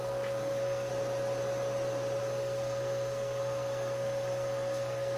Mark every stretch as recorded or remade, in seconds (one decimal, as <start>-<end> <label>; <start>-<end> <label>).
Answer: 0.0-0.9 remade; 0.9-2.2 recorded; 2.2-5.2 remade